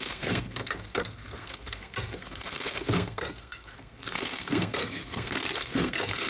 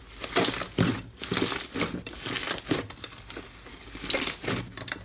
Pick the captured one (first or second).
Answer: second